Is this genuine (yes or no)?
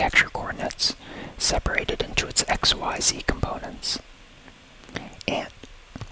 yes